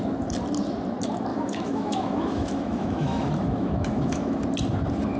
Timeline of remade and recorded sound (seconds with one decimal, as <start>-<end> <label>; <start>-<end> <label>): 0.0-1.3 recorded; 1.3-4.4 remade; 4.4-5.2 recorded